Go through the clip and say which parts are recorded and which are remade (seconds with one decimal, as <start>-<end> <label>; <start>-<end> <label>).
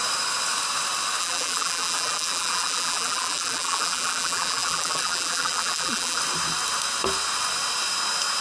0.0-1.2 recorded; 1.2-6.2 remade; 6.2-8.4 recorded